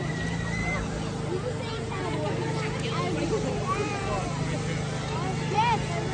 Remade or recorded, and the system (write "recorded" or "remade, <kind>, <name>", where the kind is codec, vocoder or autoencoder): recorded